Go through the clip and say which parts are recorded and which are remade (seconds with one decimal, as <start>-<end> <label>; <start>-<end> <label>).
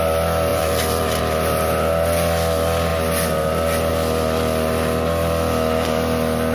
0.0-0.5 recorded; 0.5-1.2 remade; 1.2-6.5 recorded